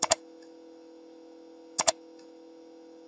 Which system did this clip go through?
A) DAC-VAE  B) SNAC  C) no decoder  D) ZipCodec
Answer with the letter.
A